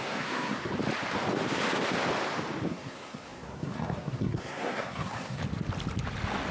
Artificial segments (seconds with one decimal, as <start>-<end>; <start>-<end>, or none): 0.0-0.7; 2.7-5.4